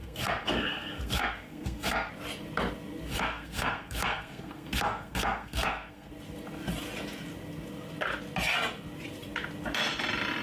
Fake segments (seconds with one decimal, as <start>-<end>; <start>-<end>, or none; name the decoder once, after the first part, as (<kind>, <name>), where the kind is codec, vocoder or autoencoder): 0.0-2.1 (codec, SNAC); 3.1-6.1